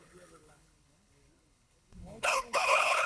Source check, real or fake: fake